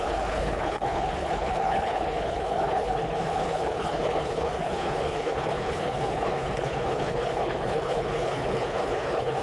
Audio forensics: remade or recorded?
remade